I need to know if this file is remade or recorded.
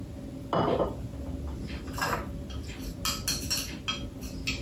recorded